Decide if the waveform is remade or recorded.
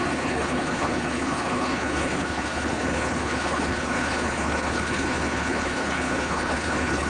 remade